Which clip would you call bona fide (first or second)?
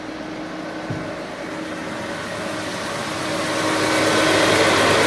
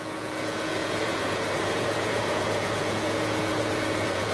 first